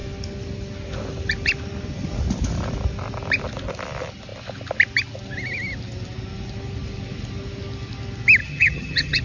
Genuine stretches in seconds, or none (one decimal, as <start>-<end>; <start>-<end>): 0.0-8.4